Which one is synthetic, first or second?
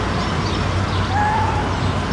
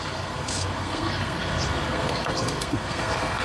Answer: second